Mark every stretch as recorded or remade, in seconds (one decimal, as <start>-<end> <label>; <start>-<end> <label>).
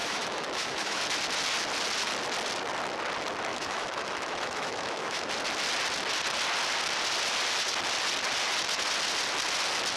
0.0-1.0 remade; 1.0-3.5 recorded; 3.5-5.3 remade; 5.3-10.0 recorded